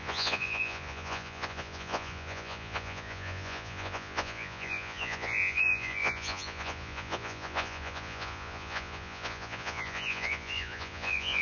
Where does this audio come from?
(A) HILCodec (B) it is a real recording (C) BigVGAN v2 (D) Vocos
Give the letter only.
D